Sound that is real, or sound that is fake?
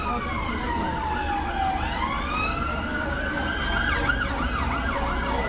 real